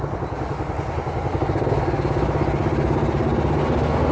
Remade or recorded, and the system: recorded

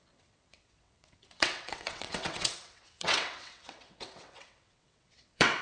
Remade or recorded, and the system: remade, vocoder, WaveNeXt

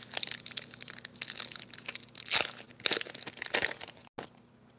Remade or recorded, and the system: recorded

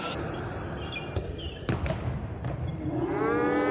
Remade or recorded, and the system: recorded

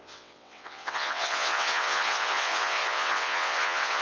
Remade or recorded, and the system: remade, vocoder, WaveNeXt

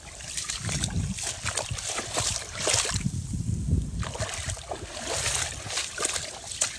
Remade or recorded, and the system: recorded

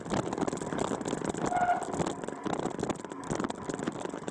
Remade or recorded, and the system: recorded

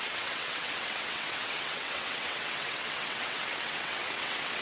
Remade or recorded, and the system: remade, vocoder, WaveNeXt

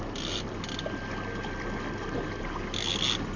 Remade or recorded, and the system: recorded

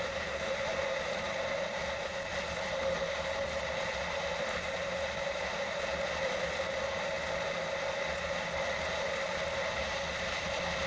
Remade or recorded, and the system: recorded